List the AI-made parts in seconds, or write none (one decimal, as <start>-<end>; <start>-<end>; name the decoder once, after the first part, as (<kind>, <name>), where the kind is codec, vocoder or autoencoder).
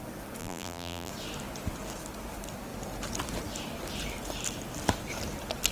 0.4-1.1 (vocoder, BigVGAN v2)